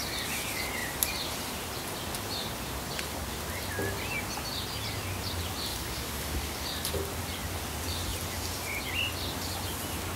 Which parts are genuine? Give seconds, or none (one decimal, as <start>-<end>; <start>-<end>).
0.0-5.7; 6.6-10.2